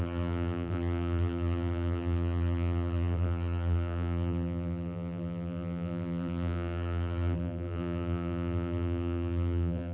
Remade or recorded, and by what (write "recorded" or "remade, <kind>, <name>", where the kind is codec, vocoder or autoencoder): remade, vocoder, BigVGAN v2